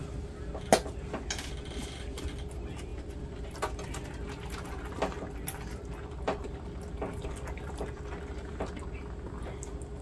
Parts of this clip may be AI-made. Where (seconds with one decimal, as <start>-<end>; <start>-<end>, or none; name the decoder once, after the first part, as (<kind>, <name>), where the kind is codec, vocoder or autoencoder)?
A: none